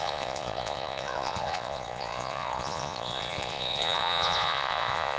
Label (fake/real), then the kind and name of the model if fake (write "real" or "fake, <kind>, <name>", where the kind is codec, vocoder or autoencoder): fake, vocoder, Vocos